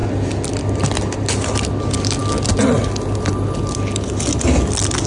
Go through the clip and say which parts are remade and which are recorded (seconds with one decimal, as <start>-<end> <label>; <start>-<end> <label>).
0.0-5.1 recorded